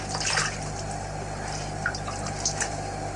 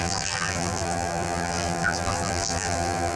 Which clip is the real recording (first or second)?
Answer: first